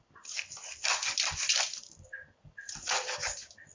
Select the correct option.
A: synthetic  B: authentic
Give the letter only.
B